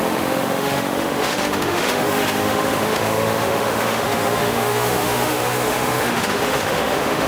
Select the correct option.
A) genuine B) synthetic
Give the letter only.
B